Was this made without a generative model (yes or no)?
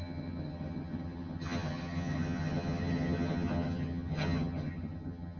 no